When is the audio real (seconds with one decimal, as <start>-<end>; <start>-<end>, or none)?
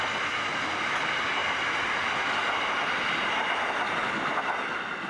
0.0-5.1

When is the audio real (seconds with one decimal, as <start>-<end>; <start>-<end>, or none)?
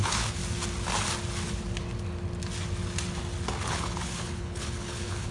0.4-3.6